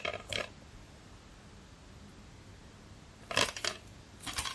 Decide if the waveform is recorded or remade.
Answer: recorded